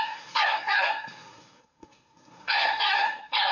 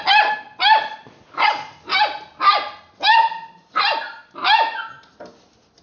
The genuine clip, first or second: second